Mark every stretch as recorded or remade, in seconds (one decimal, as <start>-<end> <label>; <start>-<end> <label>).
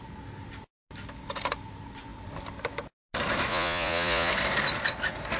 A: 0.0-3.5 recorded; 3.5-4.3 remade; 4.3-5.4 recorded